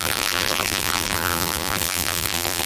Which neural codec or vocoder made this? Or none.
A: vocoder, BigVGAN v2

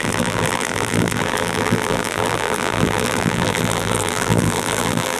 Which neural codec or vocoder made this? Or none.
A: vocoder, BigVGAN v2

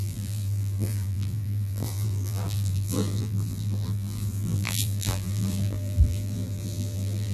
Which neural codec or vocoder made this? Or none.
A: vocoder, BigVGAN v2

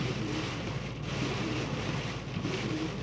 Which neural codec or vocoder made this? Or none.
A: none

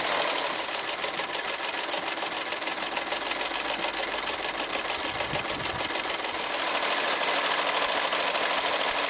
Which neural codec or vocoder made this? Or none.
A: none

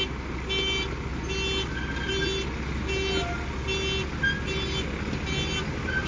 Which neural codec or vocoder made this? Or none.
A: none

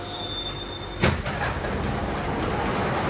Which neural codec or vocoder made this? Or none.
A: none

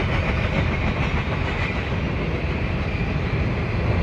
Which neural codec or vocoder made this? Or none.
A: none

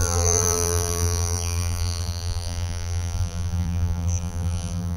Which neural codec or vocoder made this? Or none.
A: vocoder, BigVGAN v2